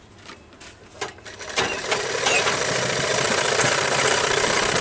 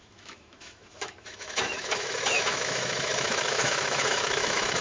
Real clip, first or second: first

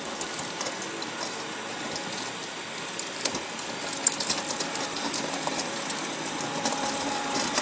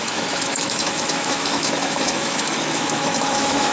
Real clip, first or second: first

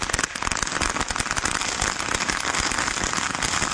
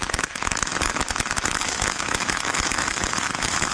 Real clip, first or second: first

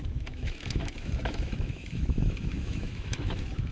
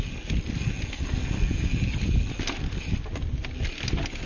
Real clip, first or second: second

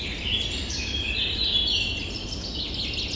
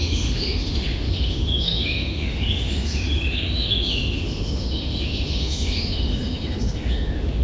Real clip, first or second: first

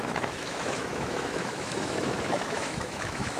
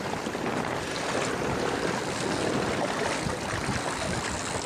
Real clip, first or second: second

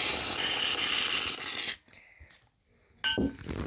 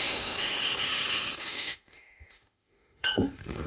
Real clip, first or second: first